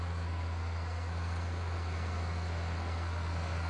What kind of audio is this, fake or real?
fake